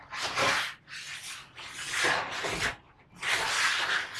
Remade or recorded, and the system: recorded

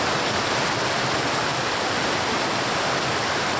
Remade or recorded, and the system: recorded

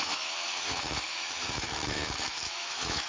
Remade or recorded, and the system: remade, autoencoder, DAC-VAE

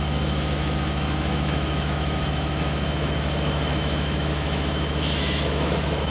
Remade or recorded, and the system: remade, autoencoder, DAC-VAE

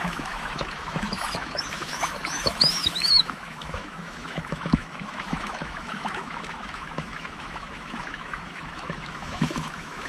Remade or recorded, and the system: remade, autoencoder, DAC-VAE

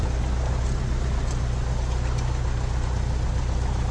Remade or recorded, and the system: recorded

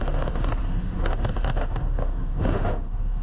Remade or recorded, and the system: remade, autoencoder, DAC-VAE